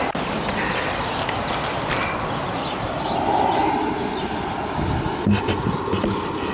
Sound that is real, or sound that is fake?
real